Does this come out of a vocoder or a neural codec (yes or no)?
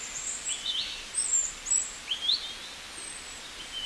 no